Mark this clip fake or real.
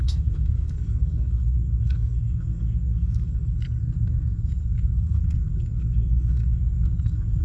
fake